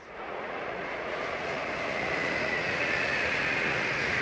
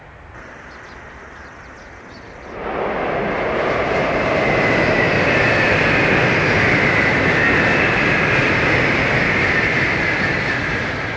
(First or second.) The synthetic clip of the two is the first